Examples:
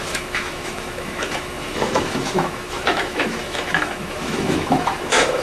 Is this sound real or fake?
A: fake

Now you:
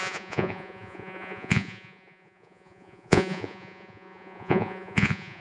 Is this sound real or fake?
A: fake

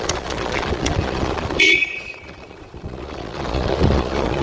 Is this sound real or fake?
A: fake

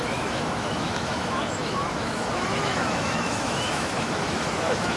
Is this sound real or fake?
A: fake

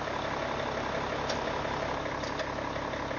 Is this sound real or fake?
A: real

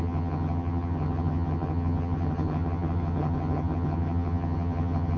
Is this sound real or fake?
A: fake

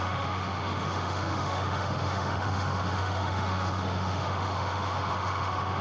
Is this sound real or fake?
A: fake